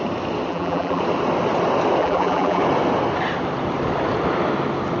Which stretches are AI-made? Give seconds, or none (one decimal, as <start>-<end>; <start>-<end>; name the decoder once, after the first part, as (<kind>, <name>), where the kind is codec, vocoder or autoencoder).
0.5-1.0 (vocoder, BigVGAN v2); 2.0-2.6